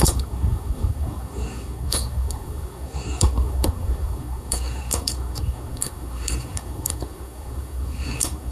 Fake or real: fake